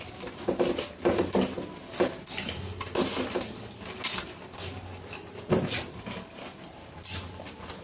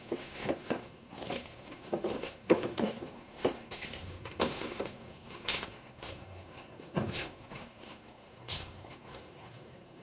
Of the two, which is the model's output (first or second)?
second